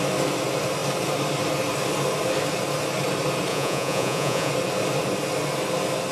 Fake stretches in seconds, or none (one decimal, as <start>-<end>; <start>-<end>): 3.5-4.5